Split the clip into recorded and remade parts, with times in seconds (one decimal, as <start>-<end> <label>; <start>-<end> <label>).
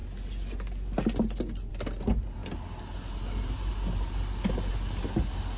0.0-5.6 recorded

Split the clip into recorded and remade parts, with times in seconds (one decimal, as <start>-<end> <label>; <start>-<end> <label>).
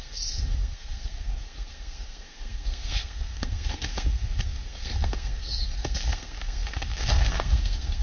0.0-8.0 remade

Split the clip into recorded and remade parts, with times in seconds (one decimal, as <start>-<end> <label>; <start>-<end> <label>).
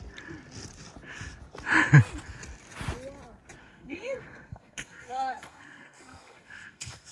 0.0-3.6 recorded; 3.6-7.1 remade